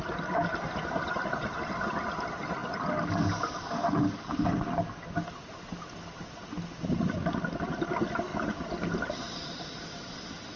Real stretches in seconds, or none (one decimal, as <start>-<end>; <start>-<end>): 0.0-10.6